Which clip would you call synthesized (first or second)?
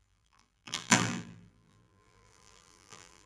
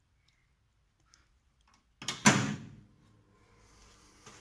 first